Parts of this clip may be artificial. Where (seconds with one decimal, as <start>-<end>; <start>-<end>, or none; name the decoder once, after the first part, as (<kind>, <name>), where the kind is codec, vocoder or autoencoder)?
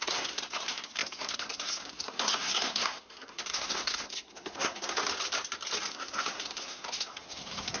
0.0-5.0 (codec, SNAC); 5.9-7.8